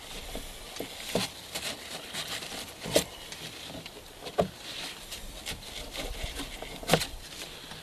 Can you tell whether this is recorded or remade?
recorded